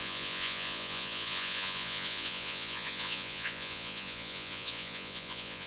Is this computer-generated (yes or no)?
yes